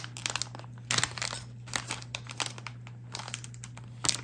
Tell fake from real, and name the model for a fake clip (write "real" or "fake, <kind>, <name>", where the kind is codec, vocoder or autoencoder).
real